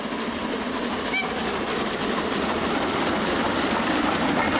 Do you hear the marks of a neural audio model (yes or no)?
no